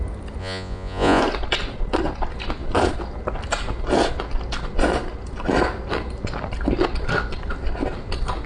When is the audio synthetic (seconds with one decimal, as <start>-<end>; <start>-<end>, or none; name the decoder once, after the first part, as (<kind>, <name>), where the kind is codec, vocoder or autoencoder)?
0.4-1.2 (vocoder, Vocos)